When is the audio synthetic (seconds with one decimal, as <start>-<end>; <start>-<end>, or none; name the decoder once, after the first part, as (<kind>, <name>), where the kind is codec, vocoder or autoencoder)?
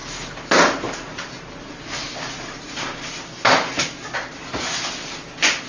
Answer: none